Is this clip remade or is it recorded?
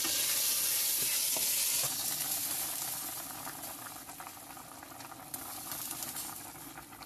recorded